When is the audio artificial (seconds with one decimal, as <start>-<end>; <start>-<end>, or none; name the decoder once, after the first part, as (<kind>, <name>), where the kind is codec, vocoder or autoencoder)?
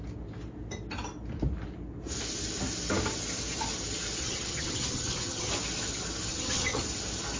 4.2-5.5 (vocoder, HiFi-GAN); 6.3-6.8